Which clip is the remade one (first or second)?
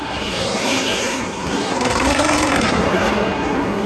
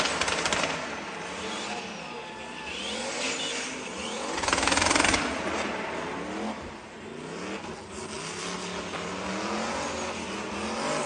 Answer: first